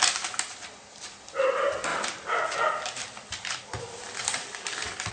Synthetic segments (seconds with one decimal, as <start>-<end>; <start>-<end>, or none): 1.9-5.1

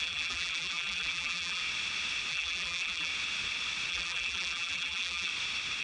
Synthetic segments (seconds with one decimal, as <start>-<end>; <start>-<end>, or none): 0.0-1.6; 2.3-3.1; 3.9-5.3

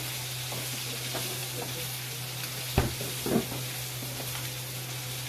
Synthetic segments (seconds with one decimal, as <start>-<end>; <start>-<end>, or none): none

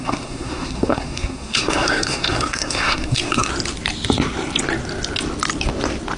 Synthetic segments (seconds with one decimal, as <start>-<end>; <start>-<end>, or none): 0.0-3.5

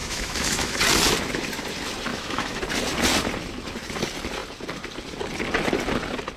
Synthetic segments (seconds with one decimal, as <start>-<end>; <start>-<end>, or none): 0.0-0.8; 2.1-2.6